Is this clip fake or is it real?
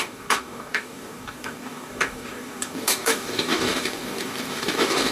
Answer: fake